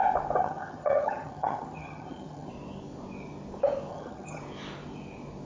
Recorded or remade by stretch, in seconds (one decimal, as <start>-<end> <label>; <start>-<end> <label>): 0.0-0.4 recorded; 0.4-2.5 remade; 2.5-3.9 recorded; 3.9-4.4 remade; 4.4-5.5 recorded